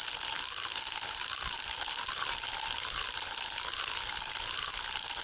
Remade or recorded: recorded